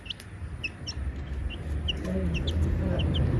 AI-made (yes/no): no